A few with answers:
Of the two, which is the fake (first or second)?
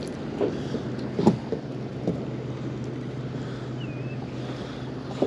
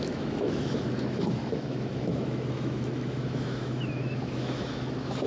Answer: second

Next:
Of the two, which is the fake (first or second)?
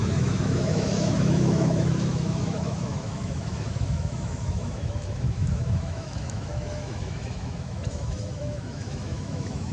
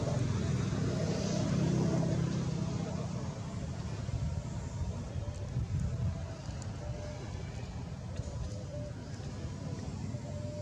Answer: first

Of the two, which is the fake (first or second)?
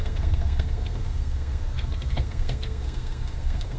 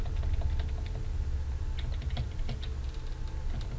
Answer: first